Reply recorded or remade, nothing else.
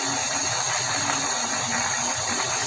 recorded